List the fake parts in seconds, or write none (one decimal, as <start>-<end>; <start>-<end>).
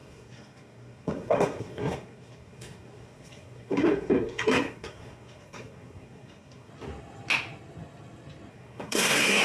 0.0-6.7; 8.5-9.4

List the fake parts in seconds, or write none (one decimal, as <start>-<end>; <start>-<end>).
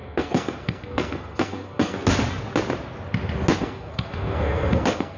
0.0-2.0; 3.6-5.2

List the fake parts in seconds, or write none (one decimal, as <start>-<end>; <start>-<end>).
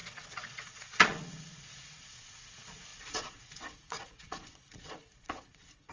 0.0-5.9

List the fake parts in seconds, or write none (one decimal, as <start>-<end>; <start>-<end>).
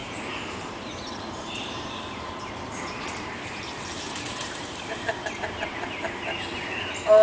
0.0-7.2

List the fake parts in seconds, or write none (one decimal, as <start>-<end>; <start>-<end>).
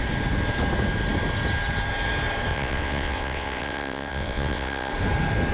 2.5-4.9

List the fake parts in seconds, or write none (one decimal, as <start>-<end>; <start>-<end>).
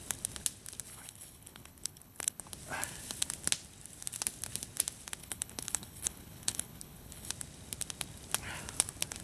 0.9-2.4; 5.2-7.3